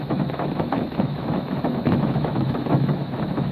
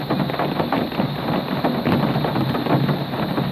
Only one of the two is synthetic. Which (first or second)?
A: first